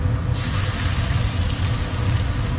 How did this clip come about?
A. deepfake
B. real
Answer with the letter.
B